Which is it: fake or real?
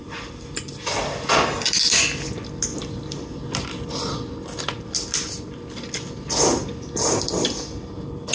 real